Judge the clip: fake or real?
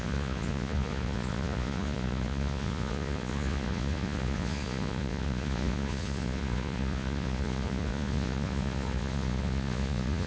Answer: fake